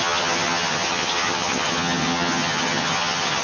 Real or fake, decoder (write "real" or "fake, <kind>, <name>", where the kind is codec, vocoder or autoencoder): fake, vocoder, HiFi-GAN